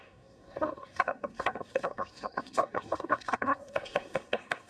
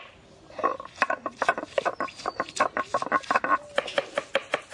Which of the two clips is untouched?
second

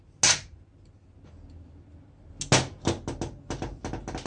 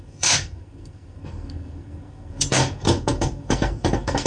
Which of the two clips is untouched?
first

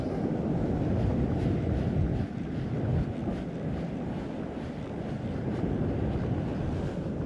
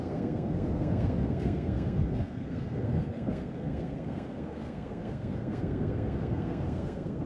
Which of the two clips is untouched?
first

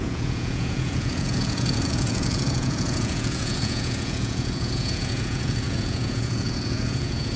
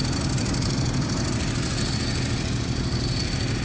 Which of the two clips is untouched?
second